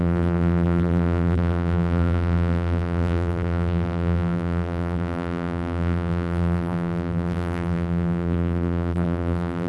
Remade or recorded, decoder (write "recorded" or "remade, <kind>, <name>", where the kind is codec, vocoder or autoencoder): remade, vocoder, BigVGAN v2